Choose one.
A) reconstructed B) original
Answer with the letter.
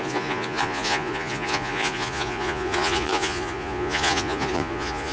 A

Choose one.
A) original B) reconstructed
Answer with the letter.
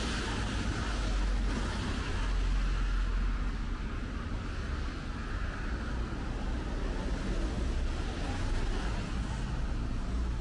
A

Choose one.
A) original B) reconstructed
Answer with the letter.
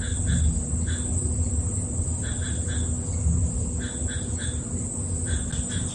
A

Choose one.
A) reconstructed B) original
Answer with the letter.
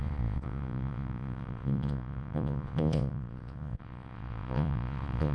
A